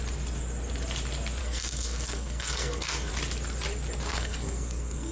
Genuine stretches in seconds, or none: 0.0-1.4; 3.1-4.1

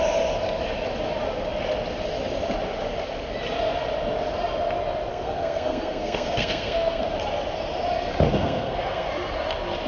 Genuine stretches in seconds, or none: 0.0-5.1; 7.0-8.3; 9.1-9.9

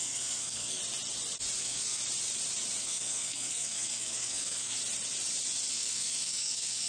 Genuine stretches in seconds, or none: 0.8-1.6; 2.0-2.8; 4.8-5.7

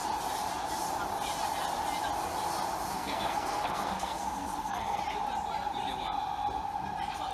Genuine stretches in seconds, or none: 0.0-2.9; 5.0-7.3

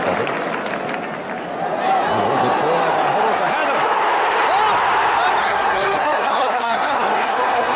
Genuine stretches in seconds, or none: 0.0-5.4

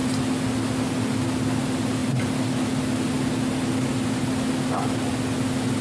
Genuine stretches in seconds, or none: 0.0-5.8

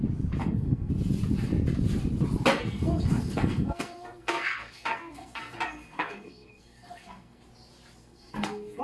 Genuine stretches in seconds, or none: 0.0-0.4; 0.9-2.5; 7.4-8.0